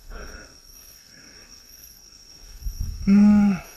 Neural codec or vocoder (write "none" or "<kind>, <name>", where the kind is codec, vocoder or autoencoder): codec, SNAC